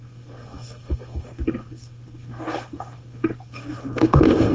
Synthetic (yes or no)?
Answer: yes